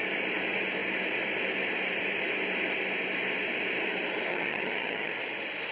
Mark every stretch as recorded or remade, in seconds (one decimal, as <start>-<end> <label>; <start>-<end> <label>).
0.0-4.3 recorded; 4.3-5.1 remade; 5.1-5.7 recorded